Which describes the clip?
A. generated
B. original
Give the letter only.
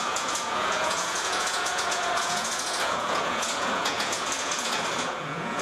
A